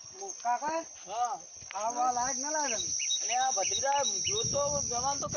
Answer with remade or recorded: recorded